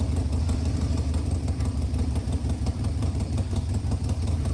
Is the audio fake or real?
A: fake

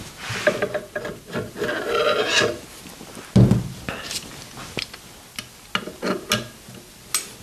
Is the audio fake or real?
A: real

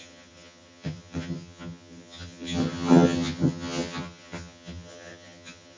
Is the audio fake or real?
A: fake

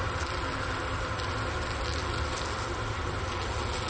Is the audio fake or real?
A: real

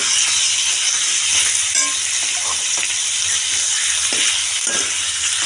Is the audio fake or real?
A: real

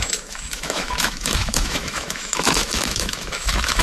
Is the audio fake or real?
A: fake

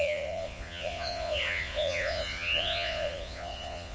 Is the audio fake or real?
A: fake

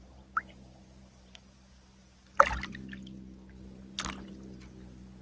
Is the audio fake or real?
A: real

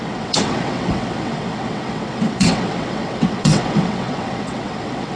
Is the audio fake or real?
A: fake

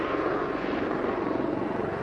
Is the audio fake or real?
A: fake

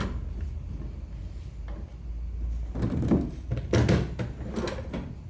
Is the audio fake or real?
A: real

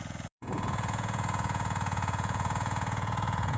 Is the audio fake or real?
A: fake